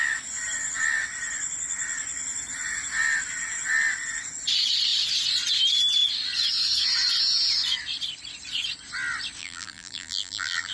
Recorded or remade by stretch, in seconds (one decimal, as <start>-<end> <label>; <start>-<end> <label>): 0.0-9.4 recorded; 9.4-10.7 remade